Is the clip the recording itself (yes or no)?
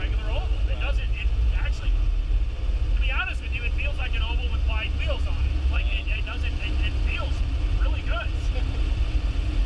yes